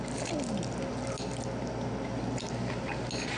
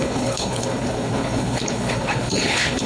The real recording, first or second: first